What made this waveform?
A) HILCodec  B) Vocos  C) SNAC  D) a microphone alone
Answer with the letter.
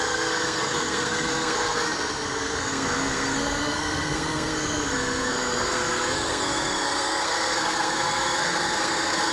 C